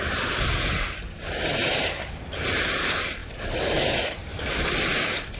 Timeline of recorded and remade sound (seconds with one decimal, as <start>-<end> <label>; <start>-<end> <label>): 0.0-5.4 recorded